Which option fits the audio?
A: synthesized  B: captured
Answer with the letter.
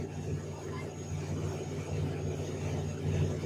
B